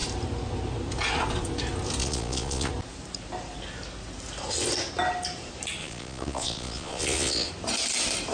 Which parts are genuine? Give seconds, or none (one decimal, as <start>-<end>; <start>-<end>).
0.0-2.0; 2.7-5.8; 7.5-8.3

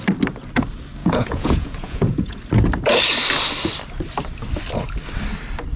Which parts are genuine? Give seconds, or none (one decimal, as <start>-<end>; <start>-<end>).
0.0-1.0; 2.4-5.8

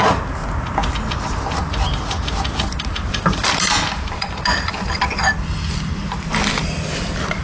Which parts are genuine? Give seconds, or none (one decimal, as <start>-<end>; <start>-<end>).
0.0-7.4

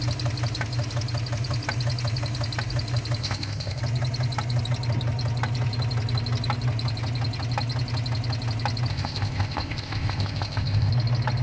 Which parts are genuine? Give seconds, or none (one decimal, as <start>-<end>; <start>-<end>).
0.0-3.2; 3.8-8.9; 10.9-11.4

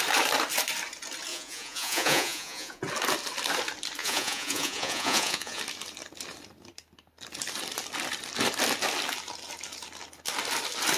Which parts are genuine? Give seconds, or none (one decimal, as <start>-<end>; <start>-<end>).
0.0-1.3; 2.8-4.0; 5.6-11.0

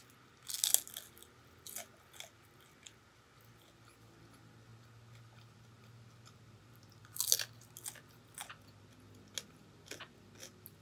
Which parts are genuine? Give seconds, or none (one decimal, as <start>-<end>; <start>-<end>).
0.0-10.8

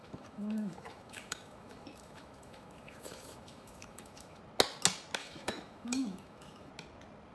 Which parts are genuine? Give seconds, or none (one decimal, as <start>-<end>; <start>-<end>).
4.4-5.2; 6.7-7.3

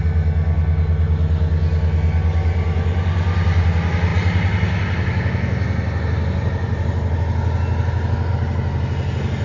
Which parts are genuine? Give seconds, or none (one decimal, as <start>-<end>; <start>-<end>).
0.0-9.4